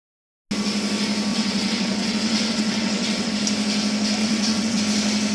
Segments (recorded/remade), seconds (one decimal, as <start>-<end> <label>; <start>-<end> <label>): 0.0-1.3 recorded; 1.3-3.3 remade; 3.3-4.2 recorded; 4.2-4.8 remade; 4.8-5.3 recorded